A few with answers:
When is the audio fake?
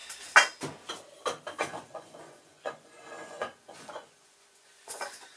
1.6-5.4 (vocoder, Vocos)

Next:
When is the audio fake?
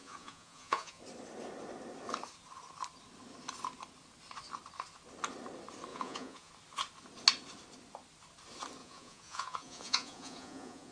0.0-1.0 (vocoder, Vocos); 5.9-6.5; 8.8-10.9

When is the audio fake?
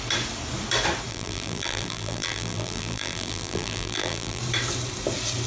1.1-4.4 (vocoder, BigVGAN v2)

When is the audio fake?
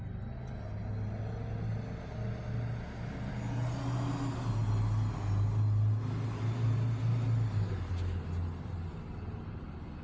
none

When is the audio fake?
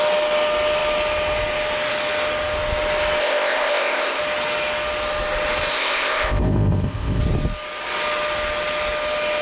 3.2-4.2 (codec, ZipCodec); 5.7-7.2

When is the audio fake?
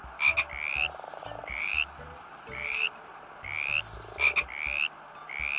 1.4-3.1 (vocoder, BigVGAN v2)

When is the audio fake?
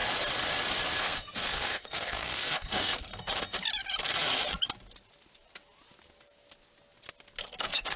1.0-3.1 (codec, SNAC); 7.6-8.0